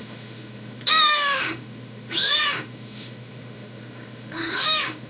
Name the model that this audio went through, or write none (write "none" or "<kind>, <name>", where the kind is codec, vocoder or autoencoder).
autoencoder, DAC-VAE